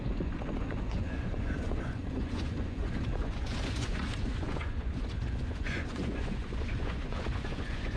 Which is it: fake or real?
fake